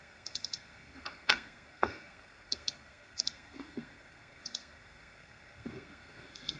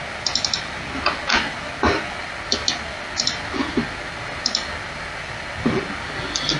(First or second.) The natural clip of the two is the second